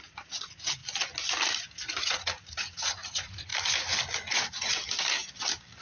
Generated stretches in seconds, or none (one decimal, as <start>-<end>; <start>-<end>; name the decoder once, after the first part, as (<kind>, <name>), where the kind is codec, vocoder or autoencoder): 0.0-0.8 (vocoder, Vocos); 1.6-3.5; 4.3-4.8